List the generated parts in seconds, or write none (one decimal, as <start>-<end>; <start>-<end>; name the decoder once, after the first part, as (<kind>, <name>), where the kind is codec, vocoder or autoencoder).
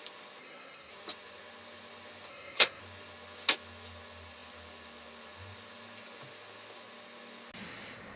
0.4-0.9 (codec, SNAC); 2.3-2.8